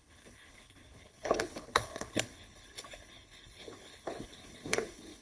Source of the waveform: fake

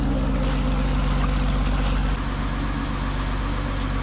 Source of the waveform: real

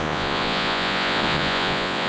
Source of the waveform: fake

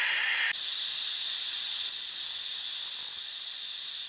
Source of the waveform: real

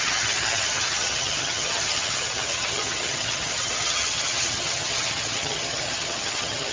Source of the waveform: fake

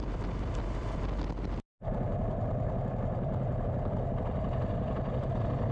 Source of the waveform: real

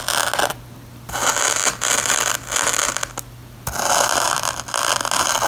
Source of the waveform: real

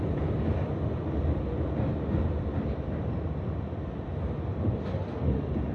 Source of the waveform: real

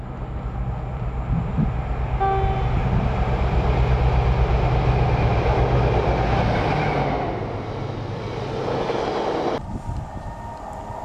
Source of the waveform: real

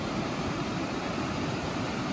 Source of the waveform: real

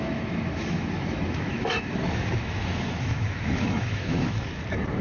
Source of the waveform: fake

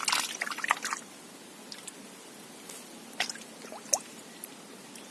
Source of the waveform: real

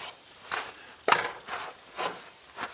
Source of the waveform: fake